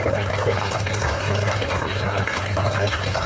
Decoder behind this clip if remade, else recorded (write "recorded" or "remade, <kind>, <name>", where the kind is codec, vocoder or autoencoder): remade, codec, SNAC